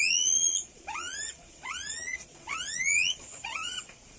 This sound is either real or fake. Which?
fake